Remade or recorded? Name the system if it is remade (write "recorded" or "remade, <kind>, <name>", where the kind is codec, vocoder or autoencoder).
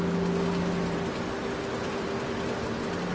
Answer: recorded